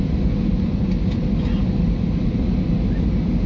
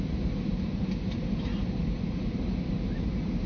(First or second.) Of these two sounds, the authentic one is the first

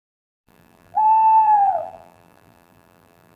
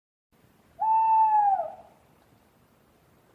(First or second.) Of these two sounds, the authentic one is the second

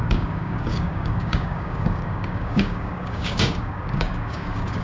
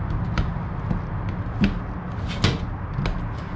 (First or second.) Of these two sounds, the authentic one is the second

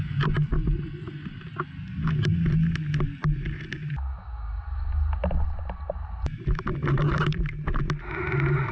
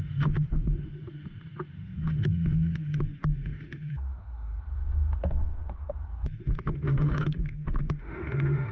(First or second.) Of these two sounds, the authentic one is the first